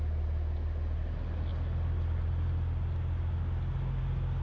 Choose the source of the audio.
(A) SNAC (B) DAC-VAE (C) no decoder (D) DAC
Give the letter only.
C